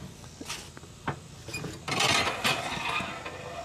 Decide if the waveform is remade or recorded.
recorded